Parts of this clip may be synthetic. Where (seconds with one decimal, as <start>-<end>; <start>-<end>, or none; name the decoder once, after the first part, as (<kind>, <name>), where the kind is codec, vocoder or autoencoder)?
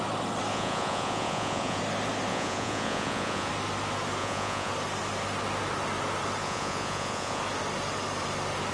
0.5-1.8 (vocoder, Vocos); 2.3-3.5; 4.2-4.7; 6.4-7.4